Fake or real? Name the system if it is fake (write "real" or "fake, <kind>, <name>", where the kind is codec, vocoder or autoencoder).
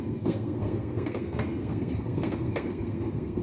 fake, codec, SNAC